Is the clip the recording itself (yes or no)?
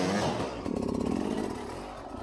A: yes